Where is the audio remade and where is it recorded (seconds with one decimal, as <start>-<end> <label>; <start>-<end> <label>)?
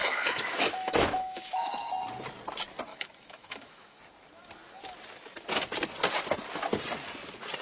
0.0-1.9 remade; 1.9-2.9 recorded; 2.9-4.0 remade; 4.0-7.6 recorded